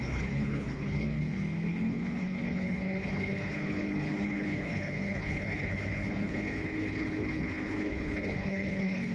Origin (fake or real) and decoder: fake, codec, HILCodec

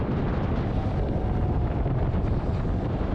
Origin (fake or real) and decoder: fake, vocoder, BigVGAN v2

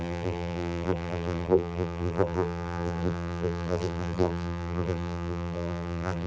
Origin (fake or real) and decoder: fake, vocoder, BigVGAN v2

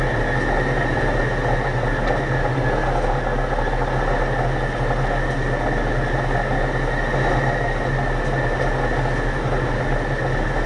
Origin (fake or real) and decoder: real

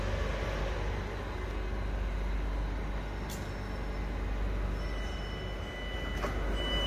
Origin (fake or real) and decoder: real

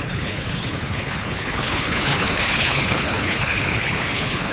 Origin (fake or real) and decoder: fake, codec, HILCodec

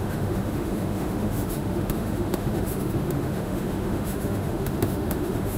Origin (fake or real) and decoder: fake, autoencoder, DAC-VAE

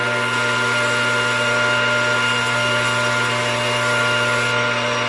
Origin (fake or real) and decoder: real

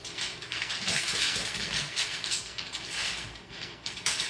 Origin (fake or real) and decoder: fake, codec, SNAC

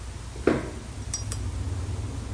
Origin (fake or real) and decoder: real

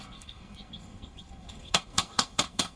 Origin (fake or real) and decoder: fake, codec, SNAC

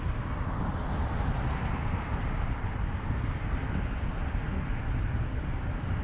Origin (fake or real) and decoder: real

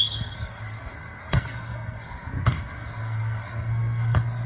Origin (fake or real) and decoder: fake, codec, SNAC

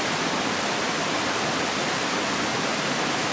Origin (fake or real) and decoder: real